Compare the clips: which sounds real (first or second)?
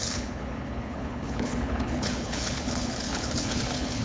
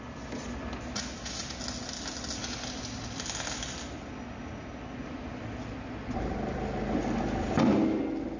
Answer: second